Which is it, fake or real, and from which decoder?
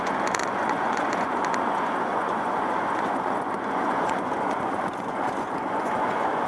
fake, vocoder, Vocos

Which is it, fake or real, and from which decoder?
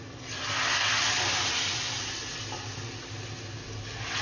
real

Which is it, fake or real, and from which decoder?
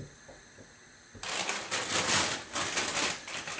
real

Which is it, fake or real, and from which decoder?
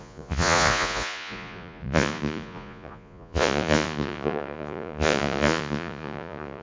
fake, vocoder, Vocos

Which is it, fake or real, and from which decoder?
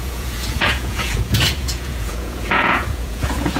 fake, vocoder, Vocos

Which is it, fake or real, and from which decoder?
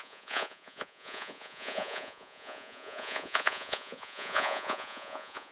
fake, vocoder, Vocos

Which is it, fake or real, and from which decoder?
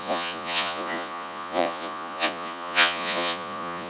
fake, vocoder, Vocos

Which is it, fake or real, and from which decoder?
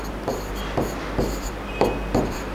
real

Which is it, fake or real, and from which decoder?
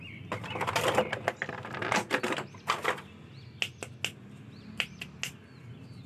real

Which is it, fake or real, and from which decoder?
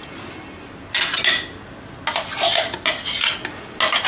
real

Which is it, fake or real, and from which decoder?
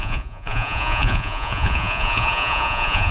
fake, vocoder, Vocos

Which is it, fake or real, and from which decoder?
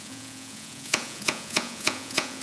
fake, vocoder, Vocos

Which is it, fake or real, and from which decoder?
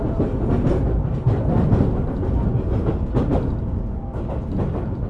real